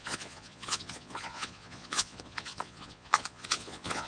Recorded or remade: remade